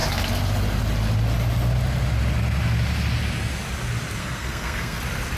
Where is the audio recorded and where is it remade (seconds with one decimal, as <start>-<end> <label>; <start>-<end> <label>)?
0.0-4.2 recorded; 4.2-5.0 remade; 5.0-5.4 recorded